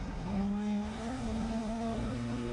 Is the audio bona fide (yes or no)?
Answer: no